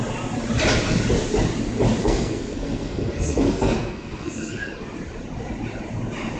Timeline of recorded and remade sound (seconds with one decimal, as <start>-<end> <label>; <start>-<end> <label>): 0.0-2.0 recorded; 2.0-4.7 remade; 4.7-6.4 recorded